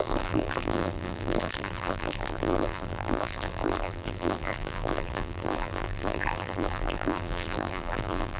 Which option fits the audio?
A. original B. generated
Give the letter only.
B